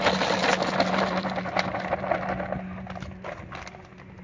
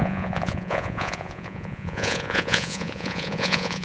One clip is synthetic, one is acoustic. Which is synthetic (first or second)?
second